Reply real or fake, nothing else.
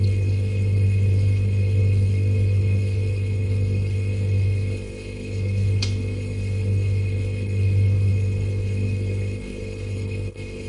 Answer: fake